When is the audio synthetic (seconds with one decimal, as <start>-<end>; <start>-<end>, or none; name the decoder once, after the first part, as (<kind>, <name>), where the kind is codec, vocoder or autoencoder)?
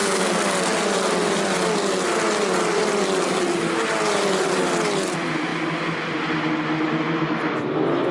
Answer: none